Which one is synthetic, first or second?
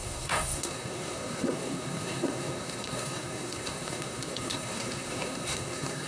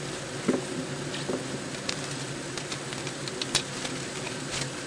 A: first